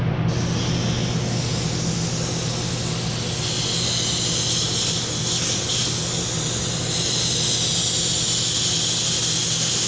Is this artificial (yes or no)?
no